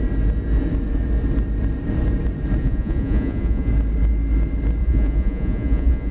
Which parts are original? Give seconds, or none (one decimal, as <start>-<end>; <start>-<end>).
0.0-2.6; 3.7-4.8